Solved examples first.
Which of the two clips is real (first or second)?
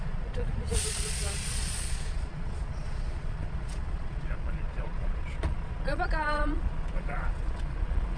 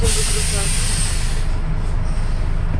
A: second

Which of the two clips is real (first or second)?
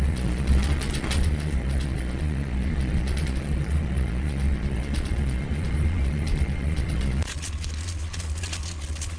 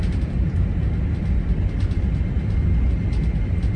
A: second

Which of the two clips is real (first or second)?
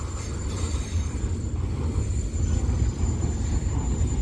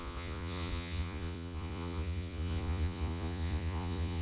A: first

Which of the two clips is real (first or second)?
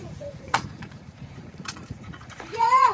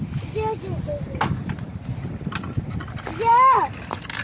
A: second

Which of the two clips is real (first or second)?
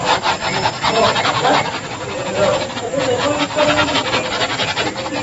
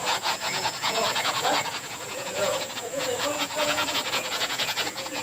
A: first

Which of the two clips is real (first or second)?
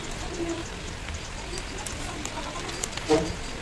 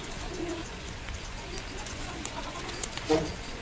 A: first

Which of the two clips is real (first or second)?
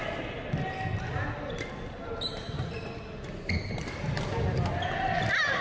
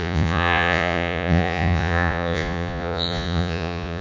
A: first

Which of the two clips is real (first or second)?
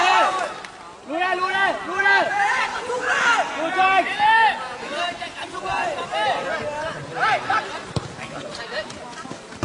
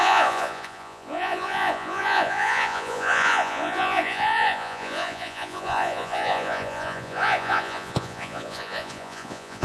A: first